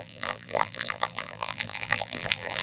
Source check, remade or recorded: remade